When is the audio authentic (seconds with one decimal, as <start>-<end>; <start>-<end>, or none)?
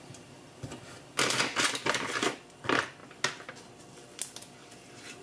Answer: 0.0-5.2